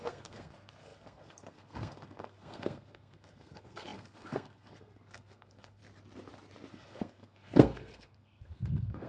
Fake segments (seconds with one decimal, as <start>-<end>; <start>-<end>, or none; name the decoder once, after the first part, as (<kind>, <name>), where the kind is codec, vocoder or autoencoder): 0.0-5.8 (codec, SNAC); 6.7-9.1